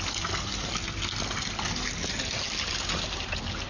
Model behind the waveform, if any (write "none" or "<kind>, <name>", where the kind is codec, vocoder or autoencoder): none